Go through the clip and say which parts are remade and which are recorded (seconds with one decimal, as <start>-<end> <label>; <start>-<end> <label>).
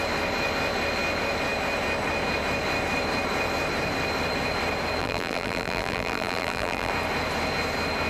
0.0-5.0 recorded; 5.0-6.9 remade; 6.9-8.1 recorded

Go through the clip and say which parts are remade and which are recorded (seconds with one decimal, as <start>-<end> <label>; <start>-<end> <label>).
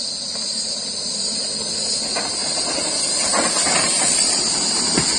0.0-5.2 recorded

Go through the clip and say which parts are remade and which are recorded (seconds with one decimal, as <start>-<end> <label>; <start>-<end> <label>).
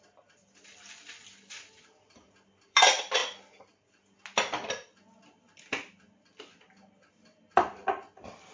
0.0-3.2 remade; 3.2-7.1 recorded; 7.1-8.5 remade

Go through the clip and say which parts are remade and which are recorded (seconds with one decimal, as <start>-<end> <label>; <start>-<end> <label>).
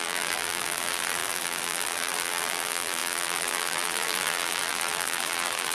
0.0-5.7 remade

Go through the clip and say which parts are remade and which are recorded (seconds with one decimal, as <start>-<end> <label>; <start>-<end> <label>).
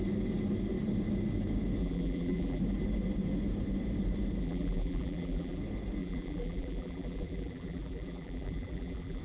0.0-1.8 recorded; 1.8-2.6 remade; 2.6-4.4 recorded; 4.4-5.6 remade; 5.6-6.0 recorded; 6.0-9.2 remade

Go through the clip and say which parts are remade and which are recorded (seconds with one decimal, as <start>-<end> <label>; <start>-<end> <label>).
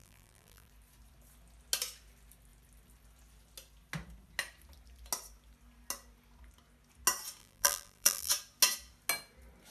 0.0-0.7 remade; 0.7-7.4 recorded; 7.4-8.3 remade; 8.3-9.7 recorded